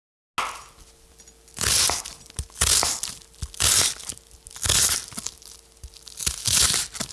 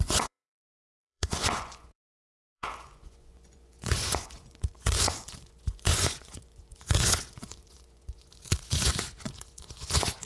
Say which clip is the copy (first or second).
second